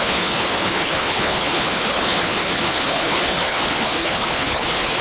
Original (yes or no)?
no